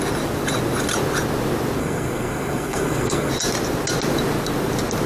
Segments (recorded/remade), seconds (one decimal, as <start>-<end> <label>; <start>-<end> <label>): 0.0-1.8 recorded; 1.8-3.3 remade; 3.3-5.1 recorded